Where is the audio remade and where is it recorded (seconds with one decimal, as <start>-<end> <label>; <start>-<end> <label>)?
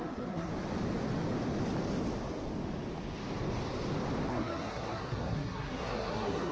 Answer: 0.0-0.5 remade; 0.5-4.3 recorded; 4.3-6.5 remade